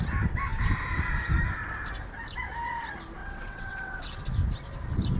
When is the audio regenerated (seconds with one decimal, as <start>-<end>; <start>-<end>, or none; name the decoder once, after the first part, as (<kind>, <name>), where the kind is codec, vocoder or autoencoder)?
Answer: 3.2-4.2 (vocoder, WaveNeXt)